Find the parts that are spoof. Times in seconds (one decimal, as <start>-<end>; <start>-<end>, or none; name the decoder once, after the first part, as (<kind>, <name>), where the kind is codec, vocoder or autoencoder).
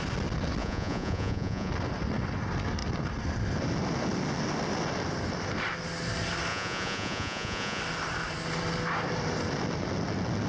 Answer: 0.6-1.7 (vocoder, Vocos); 6.5-7.8